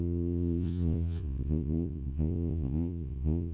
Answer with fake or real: fake